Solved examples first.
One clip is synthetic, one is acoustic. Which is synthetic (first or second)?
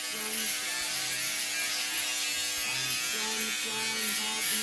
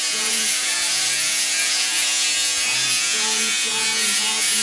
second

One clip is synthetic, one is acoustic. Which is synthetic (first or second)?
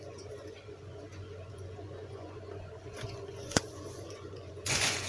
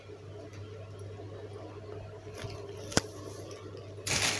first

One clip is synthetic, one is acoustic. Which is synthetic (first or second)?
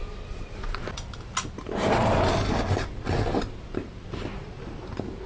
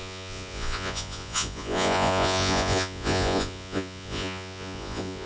second